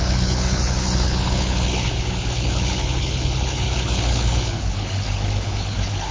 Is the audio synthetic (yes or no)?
yes